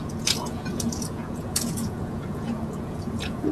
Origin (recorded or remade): remade